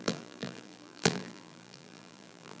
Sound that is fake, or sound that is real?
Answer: fake